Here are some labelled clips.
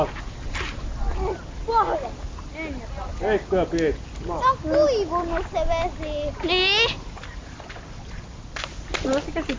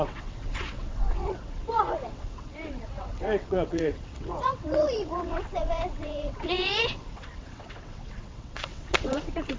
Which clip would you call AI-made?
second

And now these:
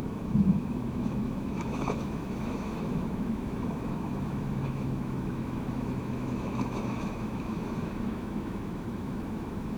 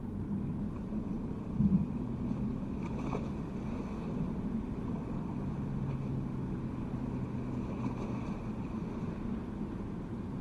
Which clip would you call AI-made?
first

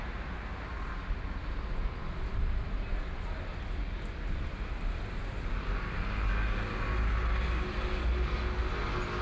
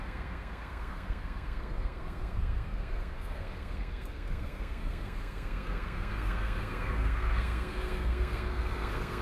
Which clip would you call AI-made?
second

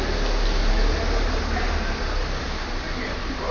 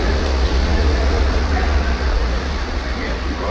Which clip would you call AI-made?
second